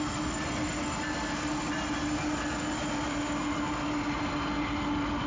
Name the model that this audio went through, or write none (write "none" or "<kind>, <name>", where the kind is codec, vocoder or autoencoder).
none